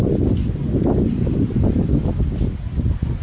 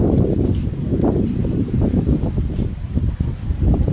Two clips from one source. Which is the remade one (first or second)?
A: second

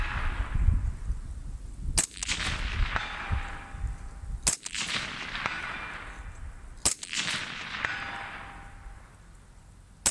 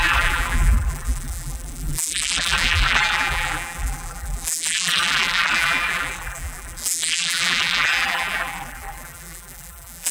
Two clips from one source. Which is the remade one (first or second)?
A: second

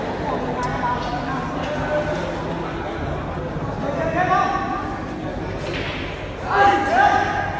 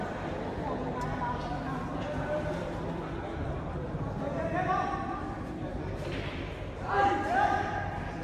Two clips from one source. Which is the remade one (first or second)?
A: second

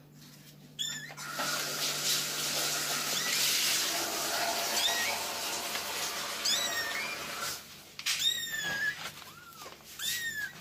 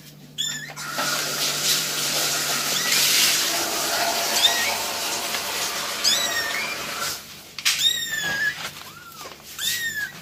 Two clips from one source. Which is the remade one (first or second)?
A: second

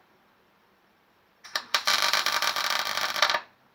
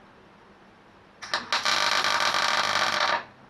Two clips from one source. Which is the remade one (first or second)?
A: first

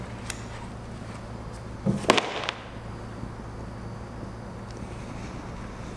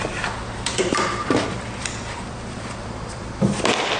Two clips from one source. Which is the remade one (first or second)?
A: second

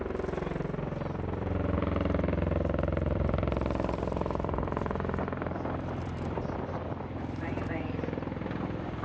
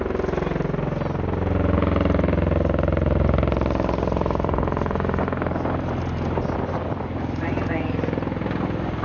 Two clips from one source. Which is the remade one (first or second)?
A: first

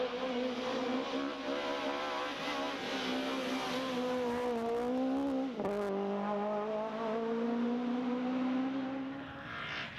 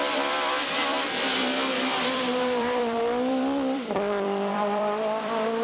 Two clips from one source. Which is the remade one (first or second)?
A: second